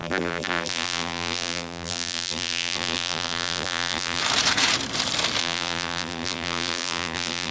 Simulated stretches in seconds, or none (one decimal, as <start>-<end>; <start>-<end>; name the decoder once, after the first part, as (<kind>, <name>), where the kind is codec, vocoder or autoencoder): 0.0-4.2 (vocoder, BigVGAN v2); 5.4-7.5

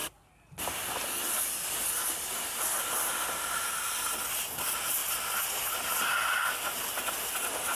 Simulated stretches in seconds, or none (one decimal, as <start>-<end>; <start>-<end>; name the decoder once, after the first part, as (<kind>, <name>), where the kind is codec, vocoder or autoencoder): none

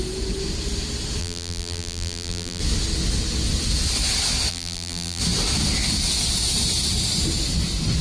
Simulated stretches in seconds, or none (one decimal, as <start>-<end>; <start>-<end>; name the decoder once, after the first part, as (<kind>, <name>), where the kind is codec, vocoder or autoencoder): 1.2-2.6 (vocoder, BigVGAN v2); 4.5-5.2

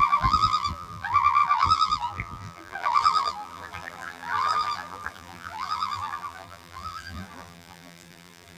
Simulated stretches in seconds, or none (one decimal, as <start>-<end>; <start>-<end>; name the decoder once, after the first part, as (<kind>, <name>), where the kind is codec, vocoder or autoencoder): 0.0-8.6 (vocoder, BigVGAN v2)

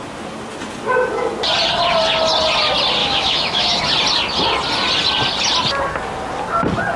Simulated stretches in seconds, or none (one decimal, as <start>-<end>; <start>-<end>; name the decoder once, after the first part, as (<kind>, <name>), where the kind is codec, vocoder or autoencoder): 3.0-3.8 (autoencoder, DAC-VAE)

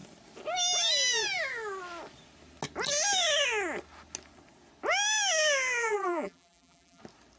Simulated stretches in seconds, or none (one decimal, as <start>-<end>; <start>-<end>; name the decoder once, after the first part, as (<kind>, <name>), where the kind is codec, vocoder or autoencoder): 5.8-7.0 (vocoder, BigVGAN v2)

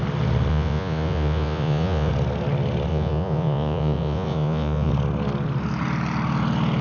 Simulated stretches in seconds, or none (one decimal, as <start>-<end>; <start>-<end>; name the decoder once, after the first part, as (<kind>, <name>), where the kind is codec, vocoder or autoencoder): 0.5-2.1 (vocoder, Vocos); 2.9-4.9

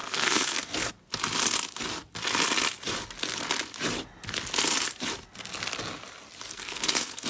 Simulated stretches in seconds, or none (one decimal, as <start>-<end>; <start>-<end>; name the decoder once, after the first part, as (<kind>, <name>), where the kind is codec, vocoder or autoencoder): 0.0-0.9 (codec, SNAC); 6.5-7.3